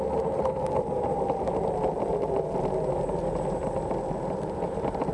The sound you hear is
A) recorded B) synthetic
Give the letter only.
A